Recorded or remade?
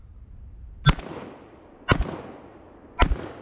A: recorded